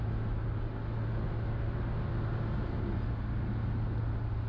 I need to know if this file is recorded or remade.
recorded